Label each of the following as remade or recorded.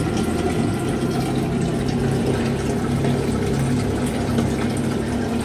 recorded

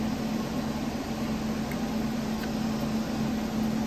recorded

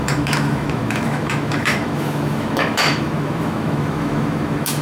remade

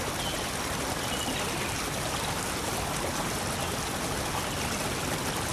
recorded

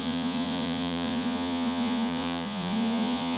remade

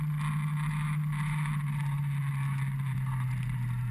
recorded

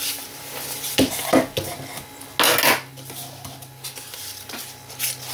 recorded